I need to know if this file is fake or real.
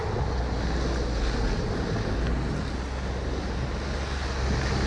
real